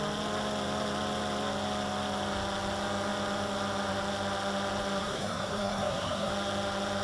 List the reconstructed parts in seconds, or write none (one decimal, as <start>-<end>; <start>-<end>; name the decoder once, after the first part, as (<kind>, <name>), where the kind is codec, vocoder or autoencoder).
5.0-6.3 (codec, SNAC)